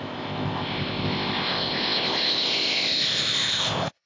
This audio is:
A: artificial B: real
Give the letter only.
A